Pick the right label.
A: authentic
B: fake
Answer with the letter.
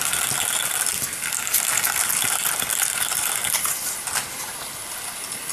A